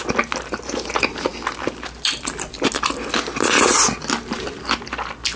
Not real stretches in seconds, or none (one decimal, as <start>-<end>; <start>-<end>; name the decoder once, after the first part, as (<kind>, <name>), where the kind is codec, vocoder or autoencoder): none